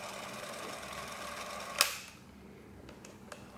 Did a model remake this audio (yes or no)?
no